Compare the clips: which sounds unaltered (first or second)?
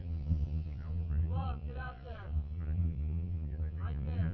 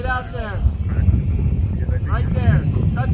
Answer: second